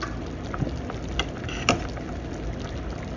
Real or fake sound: real